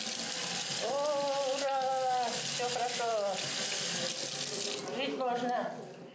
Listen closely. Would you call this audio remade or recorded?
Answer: recorded